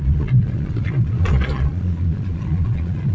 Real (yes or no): no